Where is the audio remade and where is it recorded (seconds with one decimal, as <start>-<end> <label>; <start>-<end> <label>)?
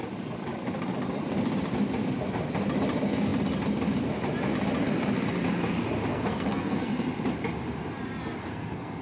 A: 0.0-6.1 recorded; 6.1-6.9 remade; 6.9-8.4 recorded; 8.4-9.0 remade